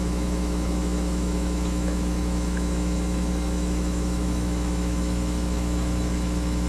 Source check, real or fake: fake